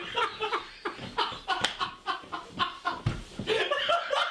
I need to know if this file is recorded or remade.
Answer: remade